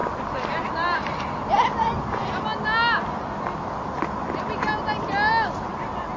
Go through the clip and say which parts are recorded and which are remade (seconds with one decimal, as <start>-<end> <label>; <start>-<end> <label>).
0.0-6.2 recorded